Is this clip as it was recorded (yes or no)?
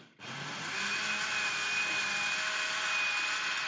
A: yes